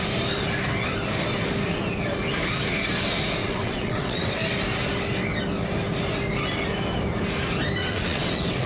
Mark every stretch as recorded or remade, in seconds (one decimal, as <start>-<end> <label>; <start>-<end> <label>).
0.0-3.4 recorded; 3.4-4.3 remade; 4.3-7.8 recorded; 7.8-8.7 remade